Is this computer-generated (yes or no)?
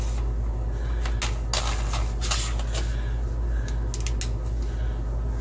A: no